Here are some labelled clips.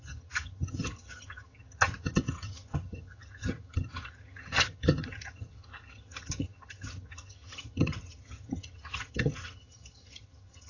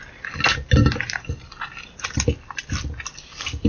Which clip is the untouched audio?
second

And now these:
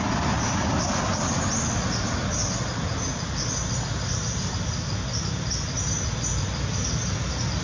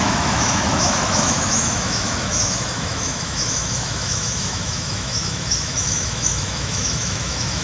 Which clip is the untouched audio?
first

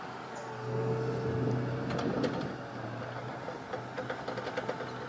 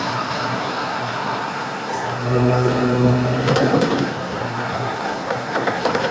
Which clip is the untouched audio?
first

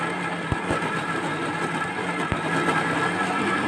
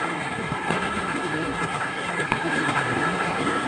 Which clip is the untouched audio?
first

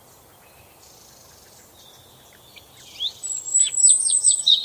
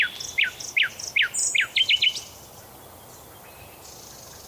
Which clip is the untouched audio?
second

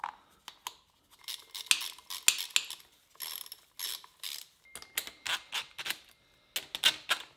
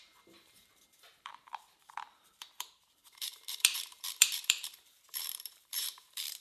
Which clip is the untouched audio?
first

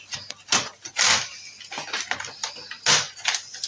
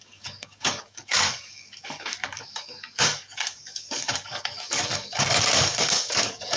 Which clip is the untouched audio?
first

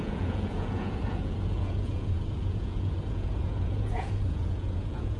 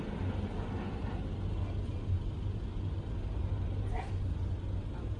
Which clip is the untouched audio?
second